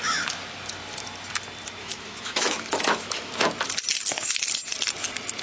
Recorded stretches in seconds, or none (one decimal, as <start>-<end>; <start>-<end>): 0.0-1.8; 3.3-5.4